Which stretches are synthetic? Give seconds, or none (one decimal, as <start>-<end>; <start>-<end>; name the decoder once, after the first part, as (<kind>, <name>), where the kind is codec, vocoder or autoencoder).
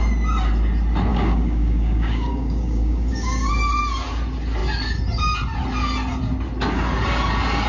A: 1.1-3.5 (codec, DAC)